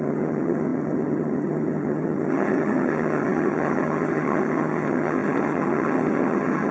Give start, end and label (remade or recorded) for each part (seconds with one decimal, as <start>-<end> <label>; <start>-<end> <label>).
0.0-6.7 remade